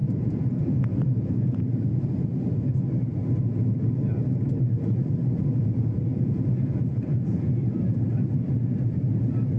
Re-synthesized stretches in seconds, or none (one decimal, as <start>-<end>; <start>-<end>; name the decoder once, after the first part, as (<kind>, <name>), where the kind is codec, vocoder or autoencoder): 0.0-1.6 (vocoder, Vocos); 5.5-7.5